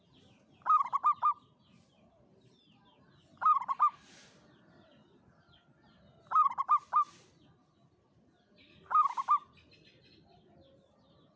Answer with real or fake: real